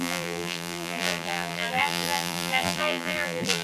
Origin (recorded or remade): remade